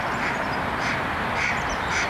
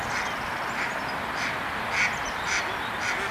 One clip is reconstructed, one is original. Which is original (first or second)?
second